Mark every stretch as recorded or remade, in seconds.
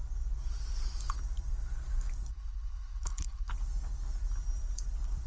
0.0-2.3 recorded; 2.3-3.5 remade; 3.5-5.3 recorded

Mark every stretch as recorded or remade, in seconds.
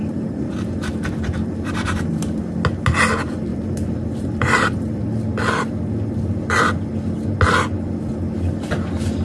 0.0-2.4 remade; 2.4-3.5 recorded; 3.5-5.0 remade; 5.0-9.2 recorded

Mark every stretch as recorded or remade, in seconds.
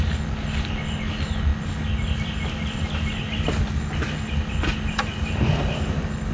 0.0-6.3 recorded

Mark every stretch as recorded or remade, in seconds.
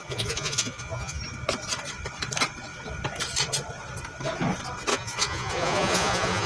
0.0-1.2 remade; 1.2-4.9 recorded; 4.9-6.5 remade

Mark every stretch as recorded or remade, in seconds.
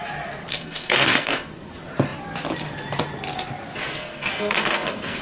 0.0-0.5 recorded; 0.5-1.7 remade; 1.7-3.8 recorded; 3.8-5.2 remade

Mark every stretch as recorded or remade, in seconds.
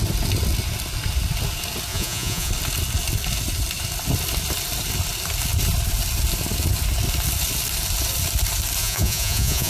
0.0-1.9 recorded; 1.9-2.5 remade; 2.5-8.8 recorded; 8.8-9.7 remade